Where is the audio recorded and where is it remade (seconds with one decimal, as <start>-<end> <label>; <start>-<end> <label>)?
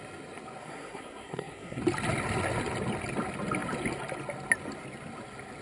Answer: 0.0-0.6 recorded; 0.6-1.8 remade; 1.8-5.6 recorded